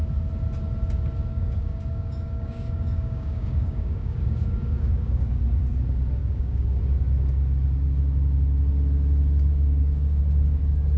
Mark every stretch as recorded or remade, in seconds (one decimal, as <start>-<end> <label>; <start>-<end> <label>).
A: 0.0-1.3 recorded; 1.3-5.4 remade; 5.4-6.2 recorded; 6.2-6.8 remade; 6.8-9.5 recorded; 9.5-10.2 remade; 10.2-11.0 recorded